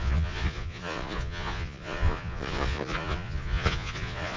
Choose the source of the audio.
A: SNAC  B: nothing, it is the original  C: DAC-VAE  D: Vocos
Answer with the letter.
D